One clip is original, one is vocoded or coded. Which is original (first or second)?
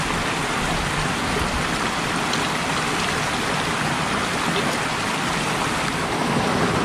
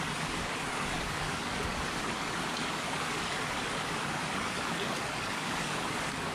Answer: first